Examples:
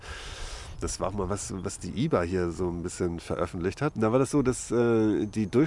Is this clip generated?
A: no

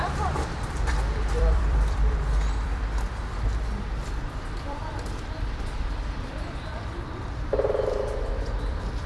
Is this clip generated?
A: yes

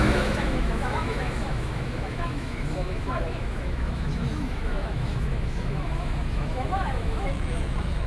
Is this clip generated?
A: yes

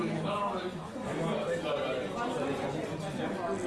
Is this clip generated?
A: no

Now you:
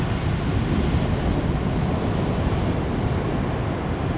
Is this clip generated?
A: no